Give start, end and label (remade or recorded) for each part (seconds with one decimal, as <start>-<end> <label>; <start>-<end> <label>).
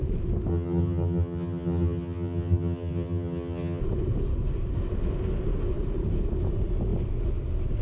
0.0-0.5 recorded; 0.5-3.8 remade; 3.8-7.8 recorded